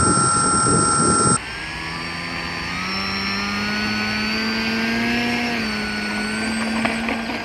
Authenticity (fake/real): real